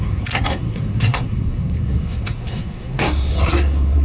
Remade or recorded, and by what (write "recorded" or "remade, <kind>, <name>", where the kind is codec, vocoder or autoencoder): remade, codec, SNAC